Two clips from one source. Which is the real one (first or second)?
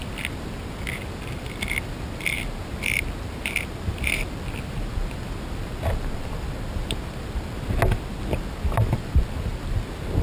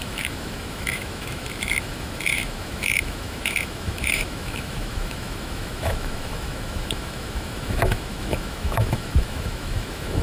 first